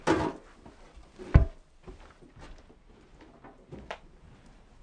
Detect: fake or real real